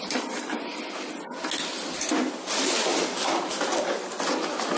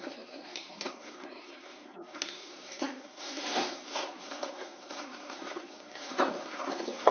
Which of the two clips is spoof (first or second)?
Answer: second